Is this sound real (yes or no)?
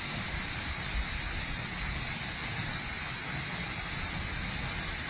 yes